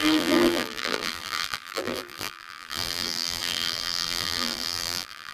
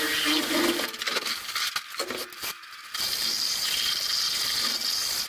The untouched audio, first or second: second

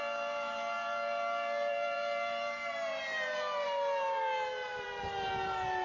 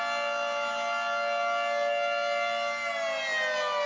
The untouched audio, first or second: second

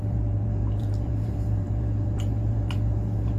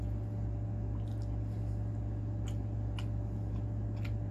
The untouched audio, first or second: second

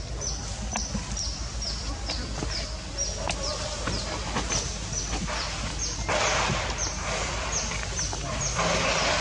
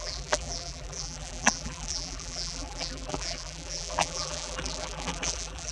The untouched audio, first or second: first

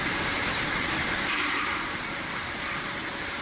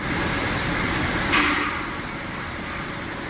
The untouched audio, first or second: second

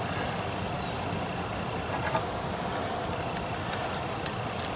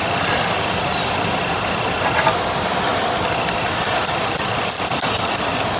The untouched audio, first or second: first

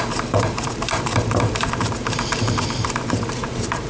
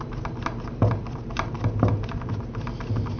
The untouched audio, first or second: second